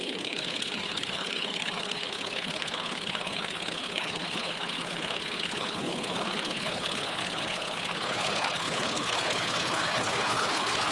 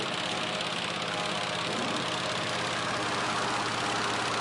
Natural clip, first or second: second